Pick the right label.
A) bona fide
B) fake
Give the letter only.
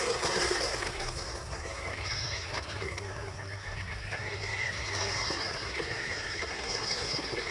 B